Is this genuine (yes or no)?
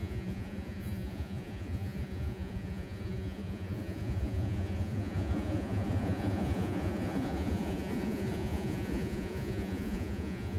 no